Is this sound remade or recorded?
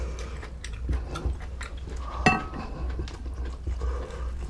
recorded